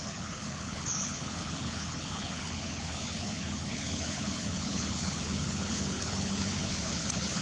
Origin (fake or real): fake